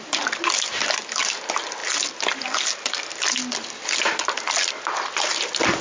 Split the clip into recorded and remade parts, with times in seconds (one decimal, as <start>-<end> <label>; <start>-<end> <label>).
0.0-5.8 recorded